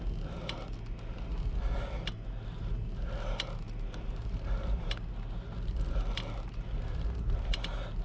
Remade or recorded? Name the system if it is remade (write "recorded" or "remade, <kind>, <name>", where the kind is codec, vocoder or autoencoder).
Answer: recorded